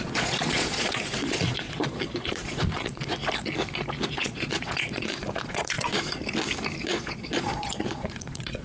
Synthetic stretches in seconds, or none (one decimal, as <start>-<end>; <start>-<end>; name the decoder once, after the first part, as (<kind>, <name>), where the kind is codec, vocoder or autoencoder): 0.0-3.2 (vocoder, Vocos); 4.1-6.2; 6.8-8.6